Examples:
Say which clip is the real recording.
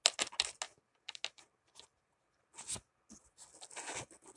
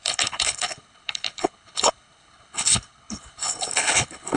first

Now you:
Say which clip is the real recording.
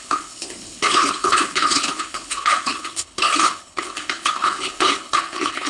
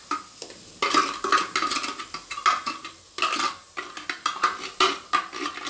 second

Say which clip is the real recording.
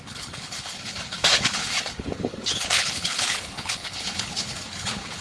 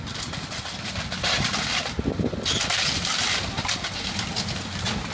second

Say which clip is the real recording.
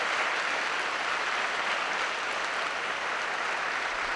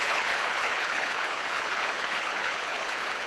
first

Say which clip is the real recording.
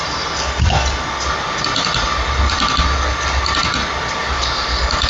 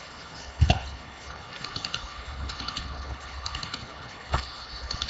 first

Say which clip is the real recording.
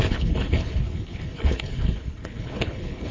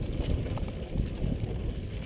second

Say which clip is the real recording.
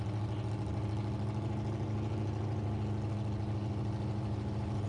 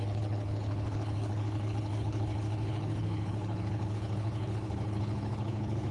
first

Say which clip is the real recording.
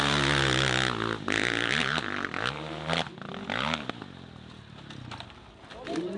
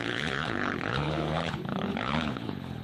first